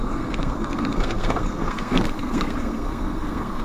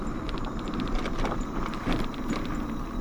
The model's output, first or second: first